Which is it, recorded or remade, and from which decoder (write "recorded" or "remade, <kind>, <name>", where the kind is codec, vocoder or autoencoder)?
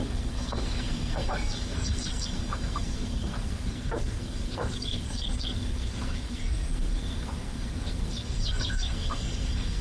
remade, codec, SNAC